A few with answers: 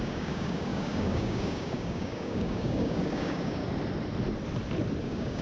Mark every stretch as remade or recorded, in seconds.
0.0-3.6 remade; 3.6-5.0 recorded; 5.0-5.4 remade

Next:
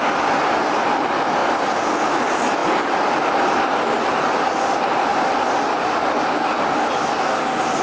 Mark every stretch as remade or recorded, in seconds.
0.0-7.8 recorded

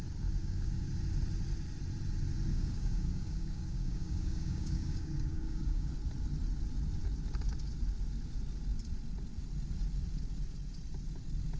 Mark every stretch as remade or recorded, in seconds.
0.0-0.4 recorded; 0.4-0.9 remade; 0.9-2.5 recorded; 2.5-5.9 remade; 5.9-11.6 recorded

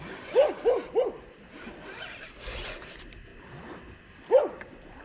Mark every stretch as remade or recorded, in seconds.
0.0-5.0 recorded

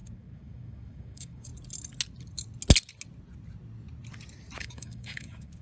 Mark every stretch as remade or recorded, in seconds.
0.0-1.5 remade; 1.5-4.6 recorded; 4.6-5.6 remade

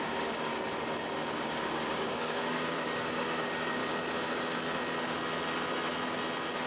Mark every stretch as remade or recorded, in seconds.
0.0-0.5 remade; 0.5-1.4 recorded; 1.4-3.8 remade; 3.8-6.7 recorded

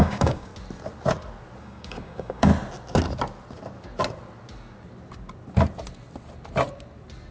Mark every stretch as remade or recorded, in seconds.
0.0-0.5 remade; 0.5-1.6 recorded; 1.6-2.5 remade; 2.5-7.3 recorded